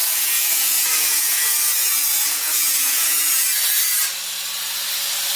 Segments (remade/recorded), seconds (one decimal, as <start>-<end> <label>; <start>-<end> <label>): 0.0-3.2 remade; 3.2-5.4 recorded